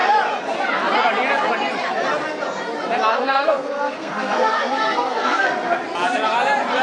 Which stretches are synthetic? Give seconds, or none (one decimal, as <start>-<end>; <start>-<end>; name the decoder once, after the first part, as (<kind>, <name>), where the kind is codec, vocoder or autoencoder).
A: 3.1-5.8 (codec, SNAC)